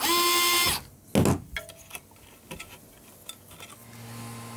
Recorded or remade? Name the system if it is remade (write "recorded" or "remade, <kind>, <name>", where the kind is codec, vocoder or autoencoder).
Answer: recorded